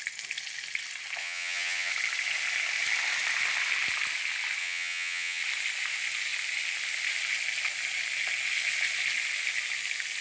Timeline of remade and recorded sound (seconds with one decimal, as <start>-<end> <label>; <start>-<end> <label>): 0.0-1.2 recorded; 1.2-1.9 remade; 1.9-4.6 recorded; 4.6-5.4 remade; 5.4-10.2 recorded